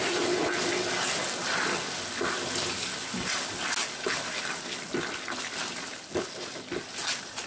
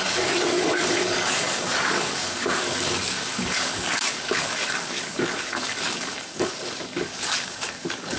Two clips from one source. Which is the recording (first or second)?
first